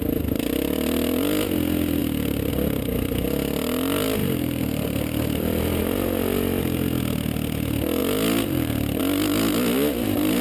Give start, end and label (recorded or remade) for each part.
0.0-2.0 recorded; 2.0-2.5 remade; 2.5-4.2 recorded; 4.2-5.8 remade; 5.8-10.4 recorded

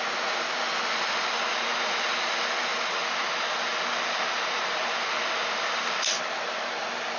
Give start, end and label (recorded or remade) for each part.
0.0-7.2 recorded

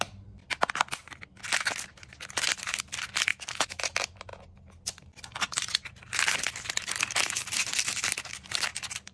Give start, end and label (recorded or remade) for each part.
0.0-3.3 recorded; 3.3-3.8 remade; 3.8-9.1 recorded